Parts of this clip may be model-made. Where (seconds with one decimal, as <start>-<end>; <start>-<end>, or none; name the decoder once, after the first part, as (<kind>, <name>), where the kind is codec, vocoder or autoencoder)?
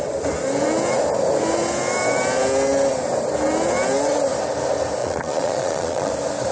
5.0-6.1 (vocoder, Vocos)